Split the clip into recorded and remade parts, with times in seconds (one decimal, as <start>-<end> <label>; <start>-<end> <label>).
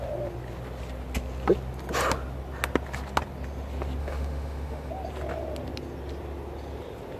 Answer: 0.0-4.0 recorded; 4.0-4.9 remade; 4.9-7.2 recorded